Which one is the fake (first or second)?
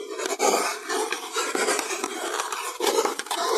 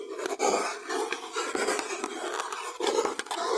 first